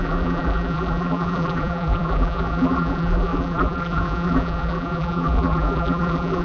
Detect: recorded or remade remade